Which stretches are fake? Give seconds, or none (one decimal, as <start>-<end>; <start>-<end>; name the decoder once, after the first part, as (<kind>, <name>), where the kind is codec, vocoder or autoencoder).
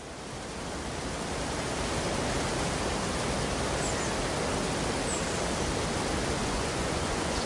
6.4-7.5 (vocoder, Vocos)